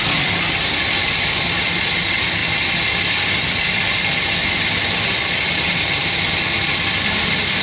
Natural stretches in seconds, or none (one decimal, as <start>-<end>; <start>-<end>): 0.0-7.6